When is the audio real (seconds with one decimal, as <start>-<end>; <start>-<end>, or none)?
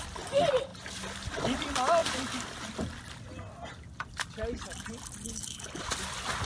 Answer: 0.0-6.4